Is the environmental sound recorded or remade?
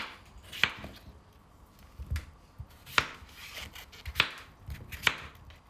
recorded